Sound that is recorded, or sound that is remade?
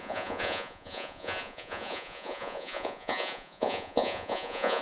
remade